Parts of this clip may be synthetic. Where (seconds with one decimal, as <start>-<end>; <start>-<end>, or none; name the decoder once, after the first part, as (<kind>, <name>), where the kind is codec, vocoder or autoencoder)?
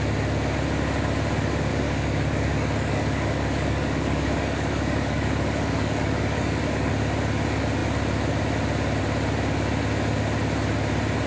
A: 1.7-6.9 (codec, DAC)